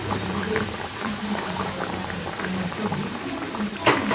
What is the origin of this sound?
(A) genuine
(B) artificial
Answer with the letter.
B